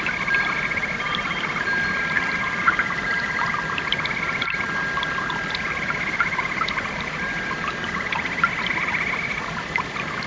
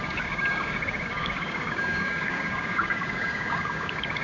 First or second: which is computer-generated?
second